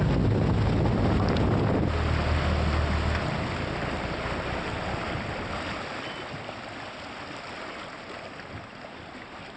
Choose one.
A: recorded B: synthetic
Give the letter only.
A